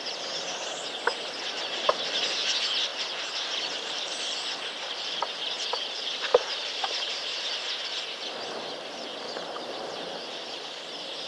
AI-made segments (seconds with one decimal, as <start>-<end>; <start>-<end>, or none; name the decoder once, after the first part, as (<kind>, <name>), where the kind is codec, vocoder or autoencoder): 2.9-4.2 (vocoder, BigVGAN v2); 6.3-7.4